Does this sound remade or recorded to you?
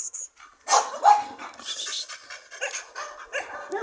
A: recorded